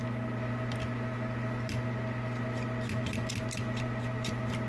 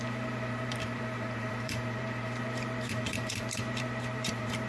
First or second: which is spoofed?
second